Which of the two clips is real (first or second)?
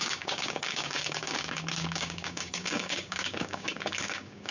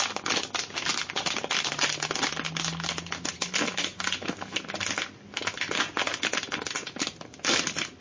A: second